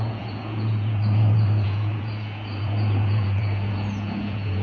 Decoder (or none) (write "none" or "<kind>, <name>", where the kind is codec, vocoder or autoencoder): vocoder, Vocos